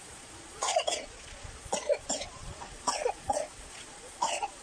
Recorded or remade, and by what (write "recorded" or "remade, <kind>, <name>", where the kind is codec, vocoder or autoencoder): remade, vocoder, Vocos